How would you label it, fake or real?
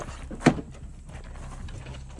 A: real